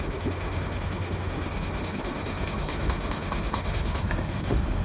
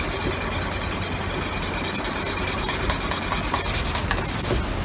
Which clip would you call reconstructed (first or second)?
first